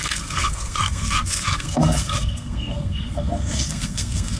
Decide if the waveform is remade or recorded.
remade